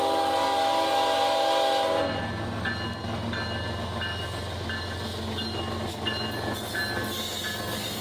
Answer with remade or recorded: recorded